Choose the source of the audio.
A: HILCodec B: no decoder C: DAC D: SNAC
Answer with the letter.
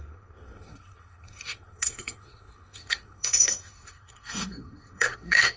D